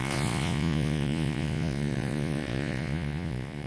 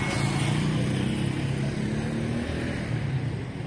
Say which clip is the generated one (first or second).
first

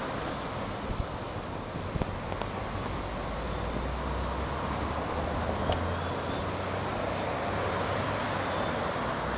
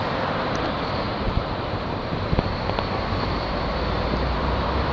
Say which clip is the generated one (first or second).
second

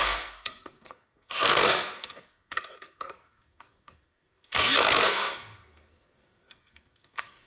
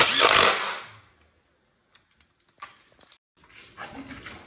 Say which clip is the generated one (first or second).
first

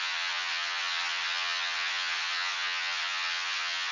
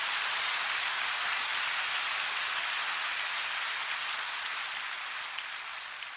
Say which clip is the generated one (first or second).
first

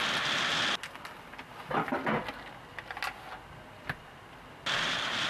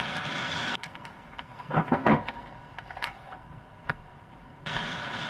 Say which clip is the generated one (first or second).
second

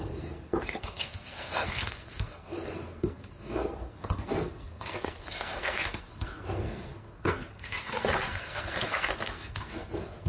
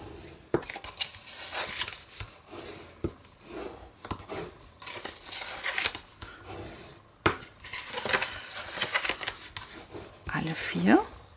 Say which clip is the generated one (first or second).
first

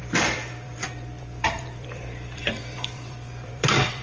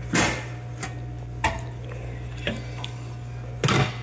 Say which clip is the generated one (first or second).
first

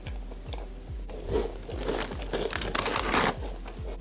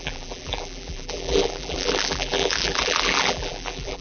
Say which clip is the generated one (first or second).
second